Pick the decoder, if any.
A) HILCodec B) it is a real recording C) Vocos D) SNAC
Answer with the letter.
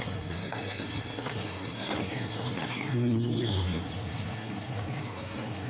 D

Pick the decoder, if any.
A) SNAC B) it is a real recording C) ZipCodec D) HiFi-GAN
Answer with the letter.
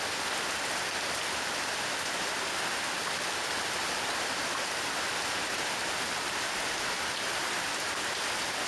B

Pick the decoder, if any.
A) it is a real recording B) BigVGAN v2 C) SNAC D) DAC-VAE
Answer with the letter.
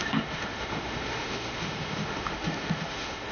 D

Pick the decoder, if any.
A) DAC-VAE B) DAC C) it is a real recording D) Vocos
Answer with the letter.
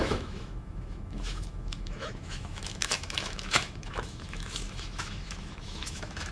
A